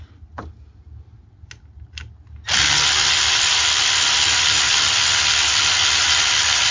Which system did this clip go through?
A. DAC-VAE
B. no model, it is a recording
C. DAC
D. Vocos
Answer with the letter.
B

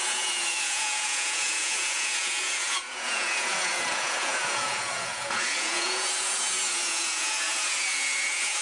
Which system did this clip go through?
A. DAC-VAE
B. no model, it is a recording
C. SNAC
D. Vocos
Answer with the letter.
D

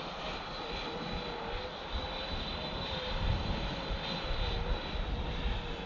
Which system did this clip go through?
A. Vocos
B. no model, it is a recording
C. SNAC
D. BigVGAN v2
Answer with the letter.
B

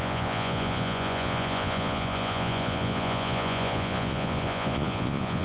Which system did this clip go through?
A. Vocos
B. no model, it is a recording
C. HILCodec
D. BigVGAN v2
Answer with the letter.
A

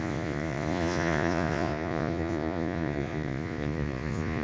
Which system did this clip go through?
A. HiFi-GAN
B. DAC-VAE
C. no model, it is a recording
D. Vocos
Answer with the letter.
D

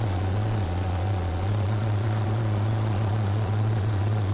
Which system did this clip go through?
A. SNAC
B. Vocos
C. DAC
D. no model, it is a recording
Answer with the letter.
B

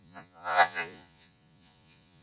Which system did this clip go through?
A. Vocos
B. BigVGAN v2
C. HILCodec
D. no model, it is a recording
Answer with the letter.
A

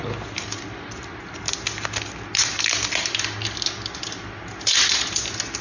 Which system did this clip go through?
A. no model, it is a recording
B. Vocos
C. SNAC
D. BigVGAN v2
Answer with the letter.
A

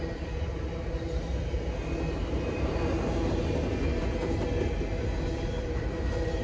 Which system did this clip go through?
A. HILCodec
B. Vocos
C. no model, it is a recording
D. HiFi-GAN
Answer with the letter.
C